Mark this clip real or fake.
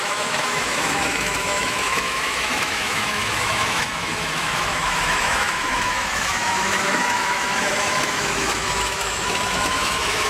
fake